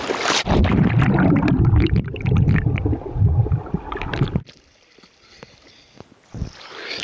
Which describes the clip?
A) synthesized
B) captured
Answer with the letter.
B